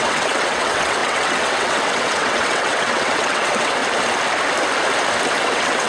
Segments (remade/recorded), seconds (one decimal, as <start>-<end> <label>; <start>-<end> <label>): 0.0-3.8 remade; 3.8-5.4 recorded; 5.4-5.9 remade